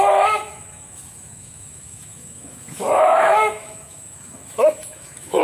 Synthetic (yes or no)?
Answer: yes